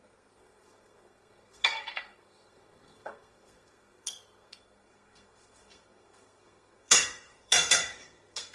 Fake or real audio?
fake